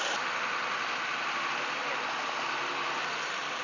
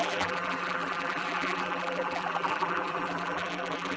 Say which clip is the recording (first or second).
first